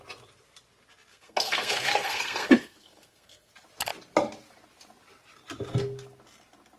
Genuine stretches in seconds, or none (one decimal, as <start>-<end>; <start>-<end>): 0.0-1.1; 3.5-6.8